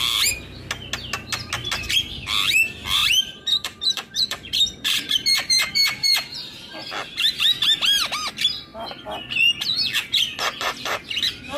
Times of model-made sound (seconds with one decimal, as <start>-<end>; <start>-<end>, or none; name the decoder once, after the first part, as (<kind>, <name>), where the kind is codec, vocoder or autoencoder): 3.0-6.7 (vocoder, BigVGAN v2)